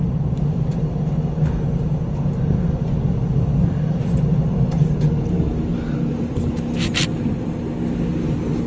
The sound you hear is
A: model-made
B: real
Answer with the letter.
B